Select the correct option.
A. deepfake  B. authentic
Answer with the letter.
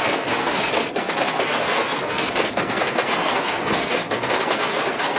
A